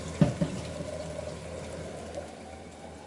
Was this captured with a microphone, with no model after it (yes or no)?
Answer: yes